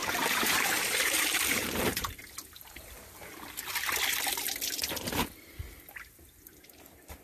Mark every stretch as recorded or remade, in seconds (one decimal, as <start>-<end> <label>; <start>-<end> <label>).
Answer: 0.0-2.2 remade; 2.2-6.5 recorded; 6.5-7.2 remade